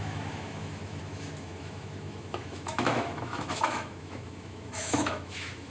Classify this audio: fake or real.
fake